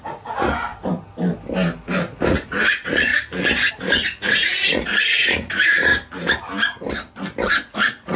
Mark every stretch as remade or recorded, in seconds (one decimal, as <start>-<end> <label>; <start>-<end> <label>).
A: 0.0-0.7 remade; 0.7-2.3 recorded; 2.3-3.1 remade; 3.1-3.7 recorded; 3.7-5.9 remade; 5.9-7.5 recorded; 7.5-8.2 remade

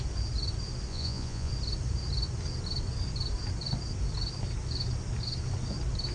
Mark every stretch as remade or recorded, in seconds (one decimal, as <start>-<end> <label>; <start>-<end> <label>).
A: 0.0-0.9 recorded; 0.9-1.5 remade; 1.5-6.1 recorded

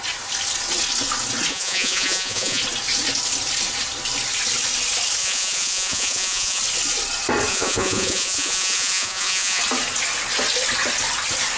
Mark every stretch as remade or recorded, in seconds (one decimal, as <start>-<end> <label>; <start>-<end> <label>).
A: 0.0-1.5 recorded; 1.5-2.6 remade; 2.6-5.2 recorded; 5.2-6.6 remade; 6.6-7.5 recorded; 7.5-9.6 remade; 9.6-11.6 recorded

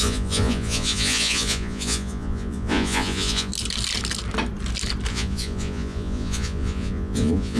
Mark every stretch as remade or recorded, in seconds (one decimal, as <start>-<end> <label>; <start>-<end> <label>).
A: 0.0-3.5 remade; 3.5-5.1 recorded; 5.1-7.6 remade